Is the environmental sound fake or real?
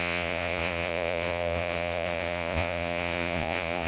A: fake